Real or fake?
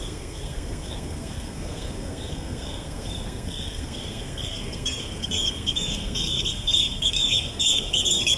fake